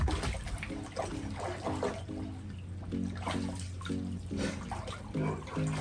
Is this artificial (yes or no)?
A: no